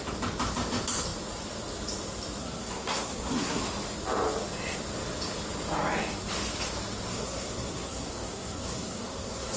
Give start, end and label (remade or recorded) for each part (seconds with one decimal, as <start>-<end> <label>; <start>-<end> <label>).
0.0-2.4 recorded; 2.4-3.6 remade; 3.6-7.1 recorded; 7.1-9.6 remade